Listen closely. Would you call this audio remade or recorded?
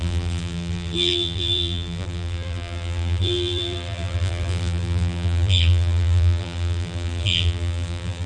remade